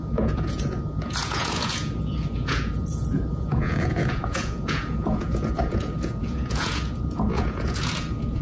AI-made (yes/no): yes